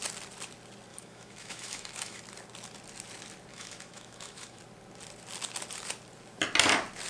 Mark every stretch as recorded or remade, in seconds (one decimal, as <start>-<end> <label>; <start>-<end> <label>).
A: 0.0-0.9 recorded; 0.9-2.2 remade; 2.2-3.5 recorded; 3.5-4.6 remade; 4.6-7.1 recorded